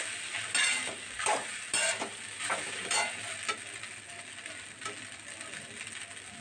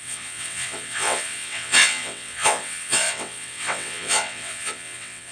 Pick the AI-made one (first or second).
second